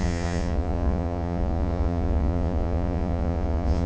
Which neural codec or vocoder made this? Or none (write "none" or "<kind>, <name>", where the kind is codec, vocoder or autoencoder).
vocoder, Vocos